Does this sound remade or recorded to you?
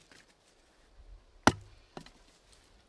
recorded